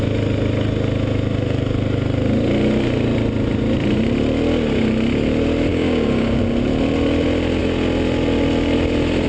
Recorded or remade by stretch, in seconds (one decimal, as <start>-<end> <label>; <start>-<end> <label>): 0.0-5.7 recorded; 5.7-6.4 remade; 6.4-9.3 recorded

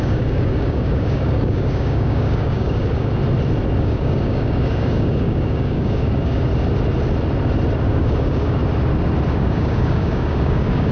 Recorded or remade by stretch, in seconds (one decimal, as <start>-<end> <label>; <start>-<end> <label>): 0.0-3.2 remade; 3.2-3.8 recorded; 3.8-6.5 remade; 6.5-7.9 recorded; 7.9-8.6 remade; 8.6-9.3 recorded; 9.3-10.9 remade

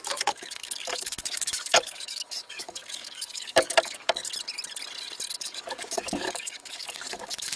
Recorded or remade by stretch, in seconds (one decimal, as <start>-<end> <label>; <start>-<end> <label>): 0.0-4.3 remade; 4.3-5.4 recorded; 5.4-7.6 remade